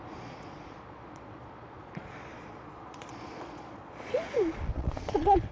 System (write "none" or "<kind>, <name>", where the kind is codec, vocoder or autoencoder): vocoder, Vocos